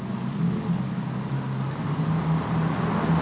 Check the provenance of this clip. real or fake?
real